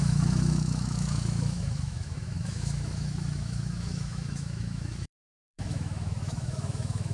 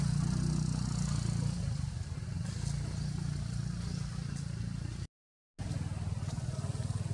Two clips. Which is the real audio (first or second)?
second